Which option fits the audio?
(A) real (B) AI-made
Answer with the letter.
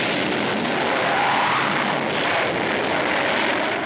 A